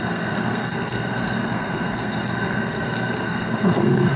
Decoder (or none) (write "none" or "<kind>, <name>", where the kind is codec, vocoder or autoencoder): codec, SNAC